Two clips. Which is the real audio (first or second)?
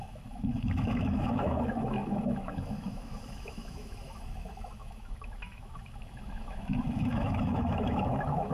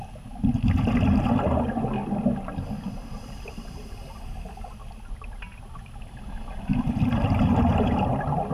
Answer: second